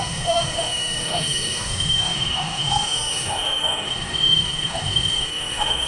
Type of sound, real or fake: fake